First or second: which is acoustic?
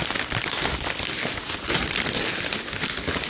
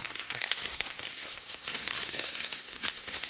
first